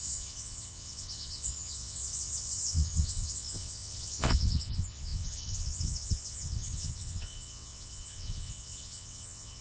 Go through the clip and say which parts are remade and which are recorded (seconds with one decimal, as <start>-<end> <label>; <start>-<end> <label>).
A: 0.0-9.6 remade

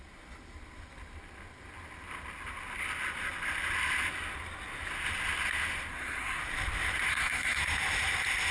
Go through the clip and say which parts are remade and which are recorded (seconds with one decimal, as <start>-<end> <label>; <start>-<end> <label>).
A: 0.0-5.9 recorded; 5.9-6.4 remade; 6.4-7.1 recorded; 7.1-7.6 remade; 7.6-8.5 recorded

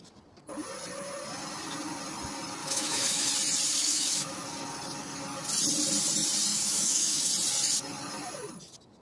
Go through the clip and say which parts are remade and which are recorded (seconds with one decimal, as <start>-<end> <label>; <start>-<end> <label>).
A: 0.0-2.6 recorded; 2.6-3.3 remade; 3.3-3.8 recorded; 3.8-4.4 remade; 4.4-6.5 recorded; 6.5-7.3 remade; 7.3-9.0 recorded

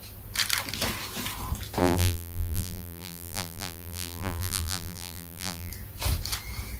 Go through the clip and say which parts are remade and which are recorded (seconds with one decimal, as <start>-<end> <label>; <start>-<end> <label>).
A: 0.0-1.8 recorded; 1.8-5.7 remade; 5.7-6.8 recorded

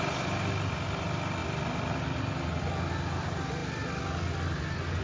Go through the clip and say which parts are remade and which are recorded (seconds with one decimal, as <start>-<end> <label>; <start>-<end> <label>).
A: 0.0-5.0 recorded

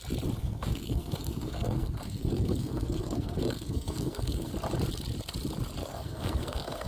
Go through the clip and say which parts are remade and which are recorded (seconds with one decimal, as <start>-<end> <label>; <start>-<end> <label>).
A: 0.0-0.4 recorded; 0.4-4.5 remade; 4.5-5.8 recorded; 5.8-6.9 remade

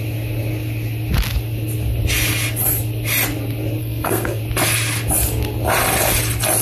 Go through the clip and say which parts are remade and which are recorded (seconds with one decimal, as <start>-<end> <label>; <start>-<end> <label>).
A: 0.0-3.8 recorded; 3.8-4.4 remade; 4.4-6.6 recorded

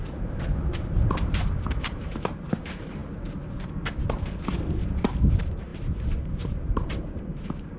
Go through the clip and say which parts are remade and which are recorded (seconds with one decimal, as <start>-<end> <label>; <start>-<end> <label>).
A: 0.0-3.0 remade; 3.0-4.5 recorded; 4.5-7.8 remade